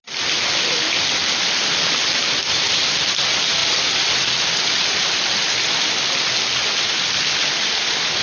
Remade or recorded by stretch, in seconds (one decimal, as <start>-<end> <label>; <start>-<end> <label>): 0.0-8.2 recorded